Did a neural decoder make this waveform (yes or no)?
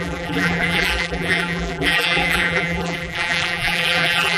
yes